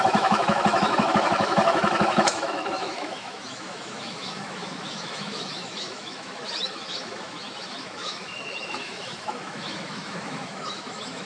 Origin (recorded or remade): remade